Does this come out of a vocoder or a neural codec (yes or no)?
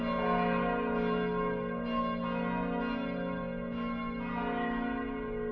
no